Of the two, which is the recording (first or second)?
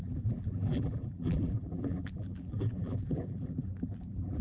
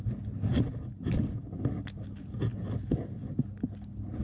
second